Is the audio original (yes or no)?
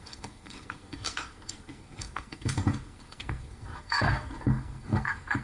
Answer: no